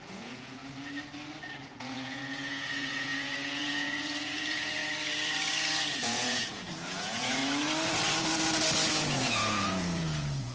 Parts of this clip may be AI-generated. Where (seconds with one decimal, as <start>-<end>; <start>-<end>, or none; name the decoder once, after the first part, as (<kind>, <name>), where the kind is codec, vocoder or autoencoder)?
0.0-0.6 (vocoder, Vocos); 1.7-4.8; 5.9-7.4; 8.9-10.5